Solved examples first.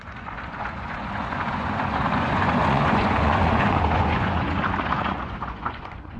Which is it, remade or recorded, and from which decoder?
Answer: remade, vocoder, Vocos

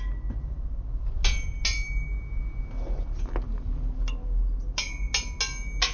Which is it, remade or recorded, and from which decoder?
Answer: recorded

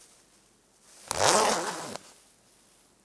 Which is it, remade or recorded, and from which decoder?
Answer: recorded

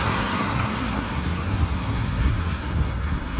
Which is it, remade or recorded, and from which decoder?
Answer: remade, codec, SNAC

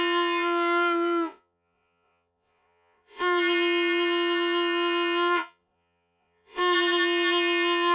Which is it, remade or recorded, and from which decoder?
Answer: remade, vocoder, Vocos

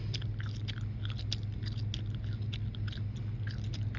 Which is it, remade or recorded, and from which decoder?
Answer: recorded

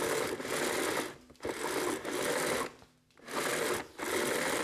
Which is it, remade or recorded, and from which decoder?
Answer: recorded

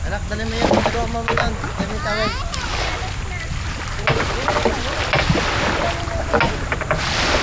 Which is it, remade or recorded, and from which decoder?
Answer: recorded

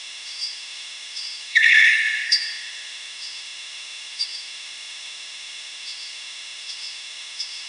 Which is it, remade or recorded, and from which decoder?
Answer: remade, autoencoder, DAC-VAE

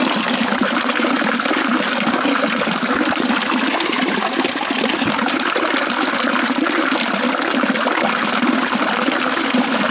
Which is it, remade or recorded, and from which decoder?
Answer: recorded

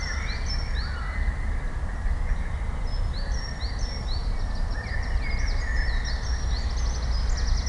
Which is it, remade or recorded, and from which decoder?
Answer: recorded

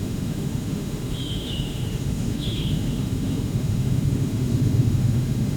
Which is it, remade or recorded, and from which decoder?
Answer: remade, autoencoder, DAC-VAE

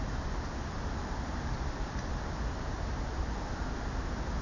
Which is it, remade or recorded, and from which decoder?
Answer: recorded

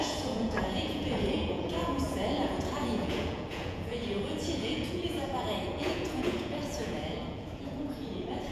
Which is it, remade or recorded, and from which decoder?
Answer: remade, vocoder, Vocos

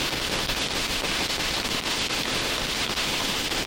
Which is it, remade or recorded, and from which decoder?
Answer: remade, autoencoder, DAC-VAE